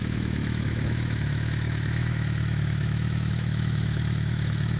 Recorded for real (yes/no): no